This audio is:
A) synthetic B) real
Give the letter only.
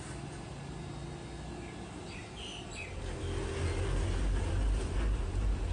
B